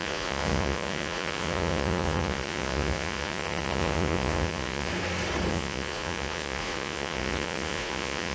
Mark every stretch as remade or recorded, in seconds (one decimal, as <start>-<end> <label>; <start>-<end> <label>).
0.0-4.9 remade; 4.9-5.5 recorded; 5.5-8.3 remade